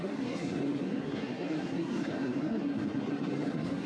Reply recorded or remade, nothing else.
remade